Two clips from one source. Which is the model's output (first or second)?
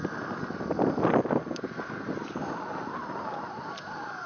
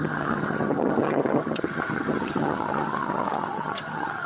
second